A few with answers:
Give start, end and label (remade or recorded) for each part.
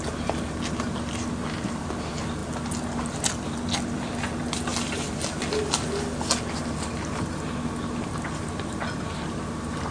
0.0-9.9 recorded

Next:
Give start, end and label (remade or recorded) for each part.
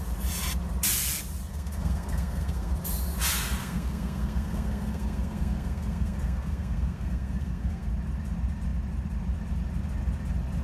0.0-1.5 recorded; 1.5-2.7 remade; 2.7-3.6 recorded; 3.6-7.9 remade; 7.9-10.6 recorded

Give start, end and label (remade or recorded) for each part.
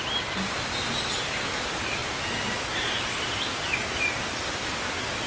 0.0-5.3 recorded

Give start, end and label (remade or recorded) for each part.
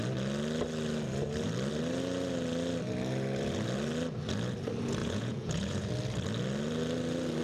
0.0-5.0 recorded; 5.0-5.9 remade; 5.9-7.4 recorded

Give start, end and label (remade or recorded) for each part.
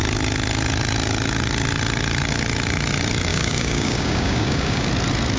0.0-3.3 recorded; 3.3-4.9 remade; 4.9-5.4 recorded